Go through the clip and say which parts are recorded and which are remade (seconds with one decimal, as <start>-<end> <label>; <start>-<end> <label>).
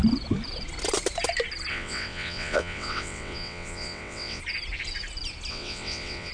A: 0.0-1.7 recorded; 1.7-4.4 remade; 4.4-5.5 recorded; 5.5-6.3 remade